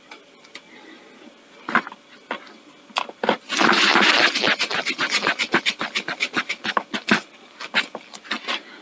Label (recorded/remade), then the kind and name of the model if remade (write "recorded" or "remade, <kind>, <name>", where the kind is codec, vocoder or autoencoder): recorded